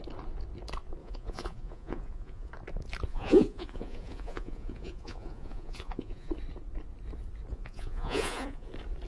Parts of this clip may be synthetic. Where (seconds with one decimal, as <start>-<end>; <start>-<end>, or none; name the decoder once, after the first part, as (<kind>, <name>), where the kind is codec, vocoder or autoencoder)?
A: 1.0-2.5 (vocoder, Vocos); 3.1-6.3; 7.5-8.7